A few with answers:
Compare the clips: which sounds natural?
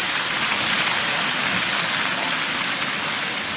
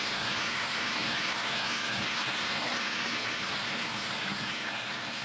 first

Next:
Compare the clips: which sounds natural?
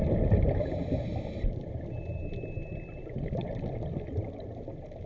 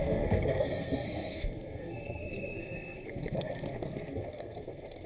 first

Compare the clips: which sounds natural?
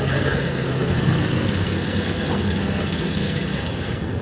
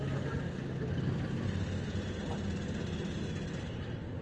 second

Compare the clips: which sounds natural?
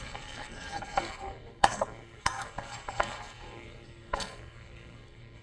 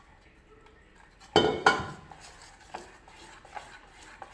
second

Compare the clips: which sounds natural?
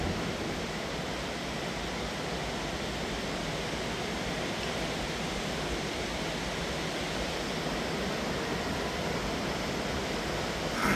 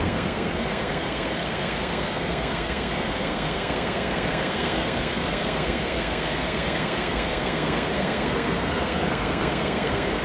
first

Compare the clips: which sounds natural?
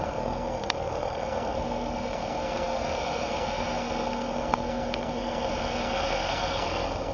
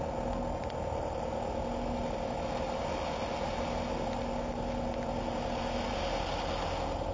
second